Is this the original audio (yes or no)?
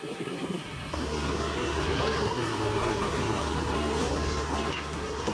no